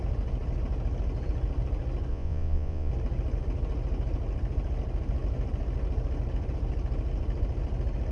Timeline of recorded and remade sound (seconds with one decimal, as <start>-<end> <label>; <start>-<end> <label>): 0.0-2.1 recorded; 2.1-2.9 remade; 2.9-8.1 recorded